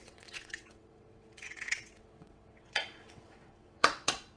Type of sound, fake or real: fake